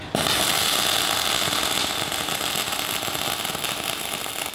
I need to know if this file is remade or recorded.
recorded